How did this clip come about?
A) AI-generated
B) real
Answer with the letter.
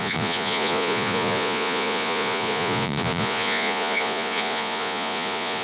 A